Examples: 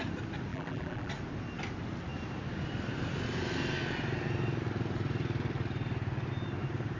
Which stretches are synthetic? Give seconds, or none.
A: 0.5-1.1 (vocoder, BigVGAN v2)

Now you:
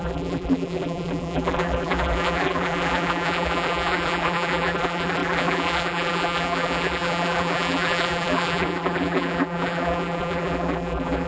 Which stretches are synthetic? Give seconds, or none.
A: 0.0-11.3 (vocoder, BigVGAN v2)

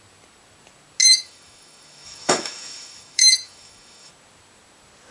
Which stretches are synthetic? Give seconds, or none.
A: 1.0-4.1 (autoencoder, DAC-VAE)

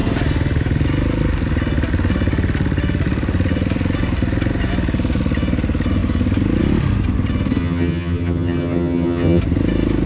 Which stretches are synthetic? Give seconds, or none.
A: 7.6-9.4 (vocoder, HiFi-GAN)

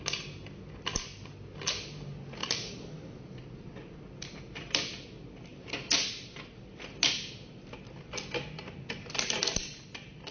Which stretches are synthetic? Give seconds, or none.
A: 2.4-3.2 (codec, DAC)

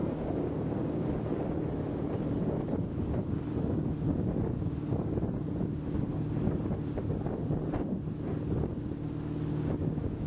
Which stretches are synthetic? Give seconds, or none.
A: 0.0-1.1 (codec, DAC); 9.5-10.3

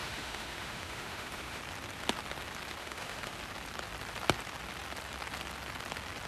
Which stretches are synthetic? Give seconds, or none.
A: 0.0-1.6 (autoencoder, DAC-VAE); 2.8-3.3

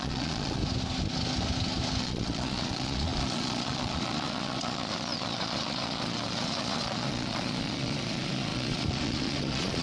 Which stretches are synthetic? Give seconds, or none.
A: 0.0-0.6 (vocoder, Vocos); 2.0-9.8